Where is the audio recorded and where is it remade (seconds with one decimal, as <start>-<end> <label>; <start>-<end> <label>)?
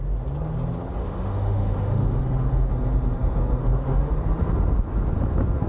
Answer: 0.0-1.0 recorded; 1.0-2.7 remade; 2.7-3.6 recorded; 3.6-4.1 remade; 4.1-5.7 recorded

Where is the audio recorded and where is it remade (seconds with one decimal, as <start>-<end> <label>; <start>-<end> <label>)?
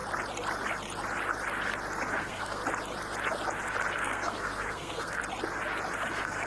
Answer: 0.0-2.1 recorded; 2.1-2.6 remade; 2.6-3.9 recorded; 3.9-5.2 remade; 5.2-6.1 recorded; 6.1-6.5 remade